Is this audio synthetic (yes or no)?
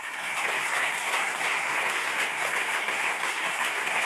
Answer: yes